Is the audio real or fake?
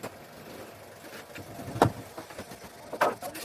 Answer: real